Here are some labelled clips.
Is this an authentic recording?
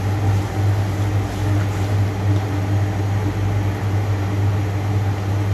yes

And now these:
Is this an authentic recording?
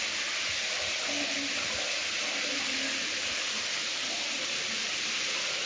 no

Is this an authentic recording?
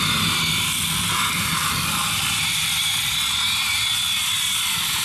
yes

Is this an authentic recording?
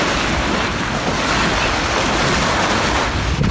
yes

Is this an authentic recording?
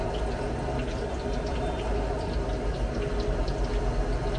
yes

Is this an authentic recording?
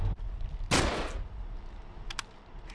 yes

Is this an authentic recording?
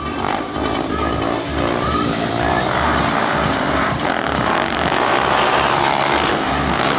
no